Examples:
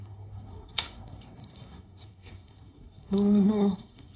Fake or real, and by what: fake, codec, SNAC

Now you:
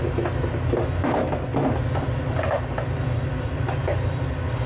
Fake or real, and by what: real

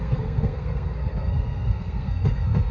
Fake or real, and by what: fake, codec, SNAC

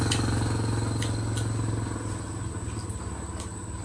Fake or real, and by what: real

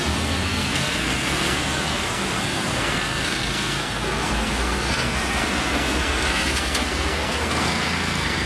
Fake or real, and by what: fake, codec, SNAC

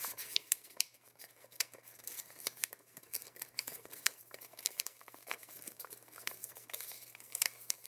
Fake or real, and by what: fake, codec, SNAC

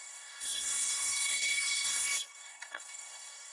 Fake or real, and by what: fake, codec, SNAC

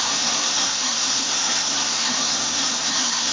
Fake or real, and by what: fake, codec, SNAC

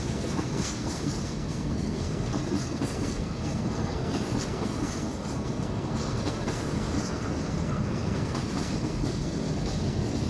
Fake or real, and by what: fake, codec, SNAC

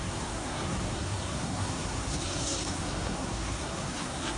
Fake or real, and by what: fake, codec, SNAC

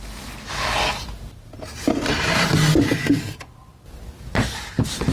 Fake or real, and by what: real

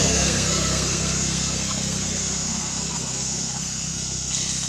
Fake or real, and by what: fake, codec, SNAC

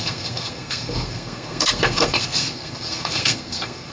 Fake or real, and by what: fake, codec, SNAC